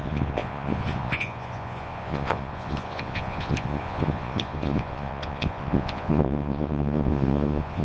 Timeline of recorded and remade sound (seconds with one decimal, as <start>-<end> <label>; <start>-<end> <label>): 0.0-7.8 remade